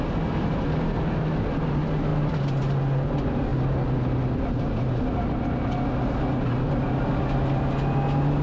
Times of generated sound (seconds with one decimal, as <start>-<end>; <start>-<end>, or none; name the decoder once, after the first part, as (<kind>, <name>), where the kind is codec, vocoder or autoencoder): 2.1-2.6 (vocoder, BigVGAN v2)